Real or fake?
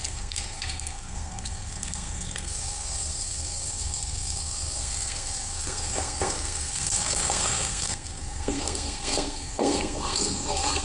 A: fake